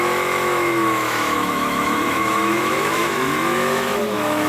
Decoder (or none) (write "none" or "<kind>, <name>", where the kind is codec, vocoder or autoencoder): autoencoder, DAC-VAE